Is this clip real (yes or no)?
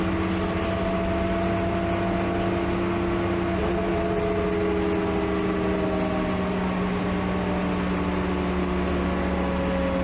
yes